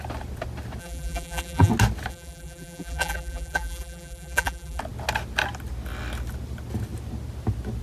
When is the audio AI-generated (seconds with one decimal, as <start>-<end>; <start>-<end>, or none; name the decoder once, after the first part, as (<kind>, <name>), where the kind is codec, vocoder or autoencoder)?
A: 0.8-1.7 (vocoder, BigVGAN v2); 2.1-4.8